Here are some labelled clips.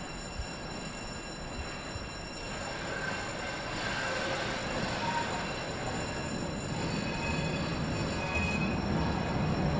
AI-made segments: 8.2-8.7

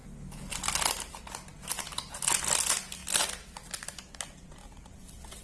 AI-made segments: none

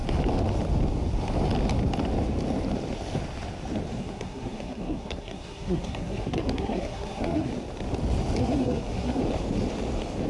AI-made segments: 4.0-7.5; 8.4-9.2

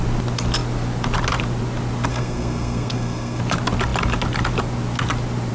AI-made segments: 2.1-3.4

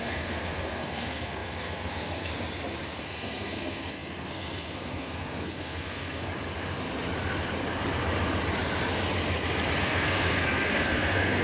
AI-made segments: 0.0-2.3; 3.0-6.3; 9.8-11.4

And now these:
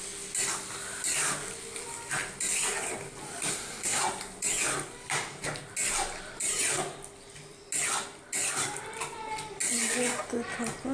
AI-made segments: 3.5-4.0

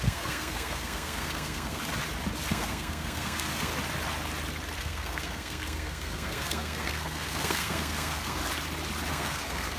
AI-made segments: 0.0-1.8; 2.5-3.7; 4.8-8.4; 9.1-9.8

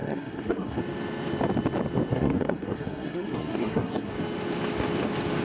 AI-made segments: 0.0-0.8; 2.1-4.1